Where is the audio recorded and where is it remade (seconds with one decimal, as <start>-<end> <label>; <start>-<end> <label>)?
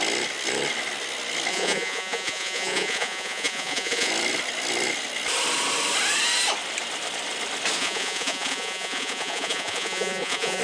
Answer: 0.0-1.5 recorded; 1.5-4.1 remade; 4.1-7.8 recorded; 7.8-10.6 remade